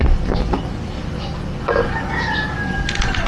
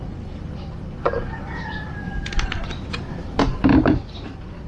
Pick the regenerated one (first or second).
second